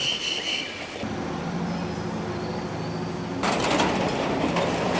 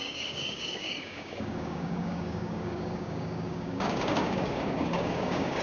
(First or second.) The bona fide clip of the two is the first